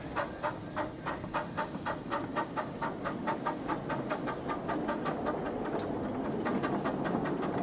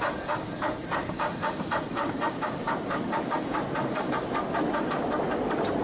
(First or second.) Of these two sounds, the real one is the first